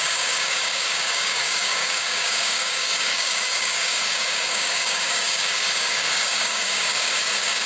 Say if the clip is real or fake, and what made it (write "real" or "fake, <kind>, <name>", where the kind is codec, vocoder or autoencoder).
fake, codec, DAC